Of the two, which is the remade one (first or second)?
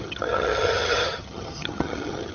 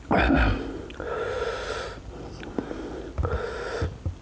first